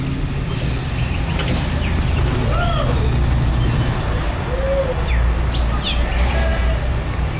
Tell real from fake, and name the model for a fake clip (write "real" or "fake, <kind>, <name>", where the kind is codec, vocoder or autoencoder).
real